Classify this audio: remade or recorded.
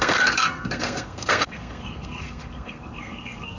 remade